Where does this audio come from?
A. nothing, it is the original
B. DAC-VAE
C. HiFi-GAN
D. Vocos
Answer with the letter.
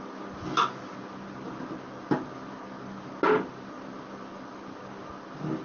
A